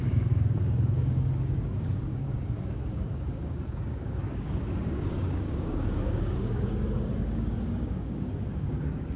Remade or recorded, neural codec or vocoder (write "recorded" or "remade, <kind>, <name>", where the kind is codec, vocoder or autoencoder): remade, codec, DAC